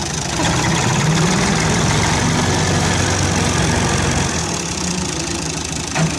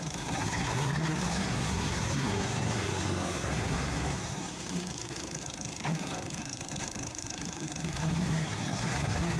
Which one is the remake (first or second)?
second